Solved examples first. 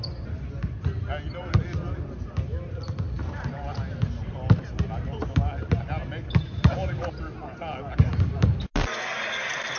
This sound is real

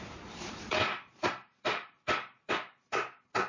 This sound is fake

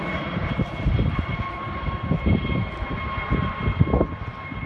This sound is real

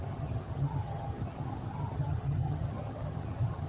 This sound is fake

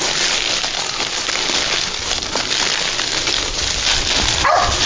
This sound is real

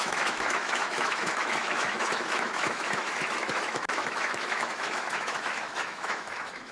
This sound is fake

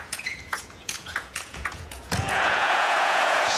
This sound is fake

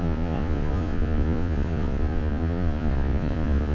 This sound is fake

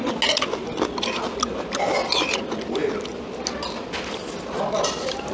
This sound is real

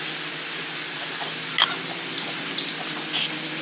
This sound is real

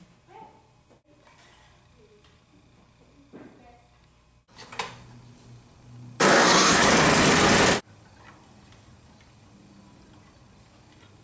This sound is real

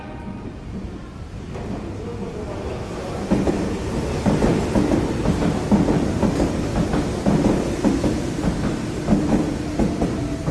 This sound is real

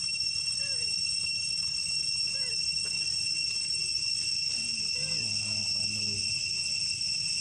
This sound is real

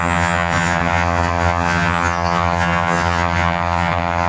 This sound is fake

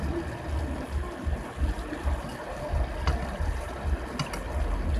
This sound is real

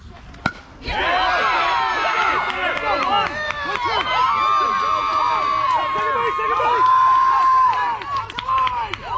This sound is real